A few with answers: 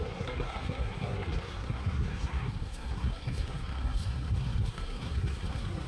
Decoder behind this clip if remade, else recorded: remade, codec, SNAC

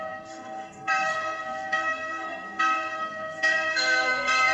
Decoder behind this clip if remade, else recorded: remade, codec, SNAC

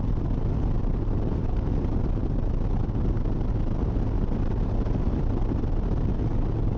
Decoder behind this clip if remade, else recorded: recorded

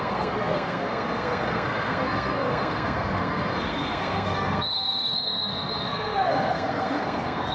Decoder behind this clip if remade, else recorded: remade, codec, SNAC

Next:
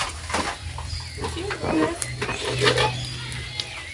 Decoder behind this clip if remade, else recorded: recorded